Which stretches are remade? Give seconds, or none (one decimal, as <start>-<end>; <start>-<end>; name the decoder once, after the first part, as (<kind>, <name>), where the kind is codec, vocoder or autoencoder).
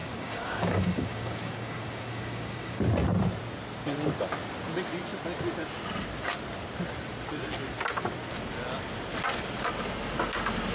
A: 0.0-2.8 (codec, DAC)